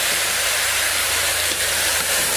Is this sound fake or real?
fake